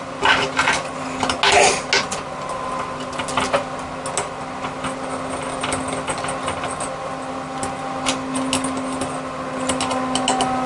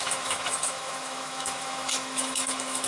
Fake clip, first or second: second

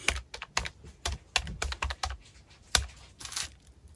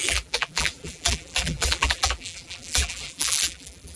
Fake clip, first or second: second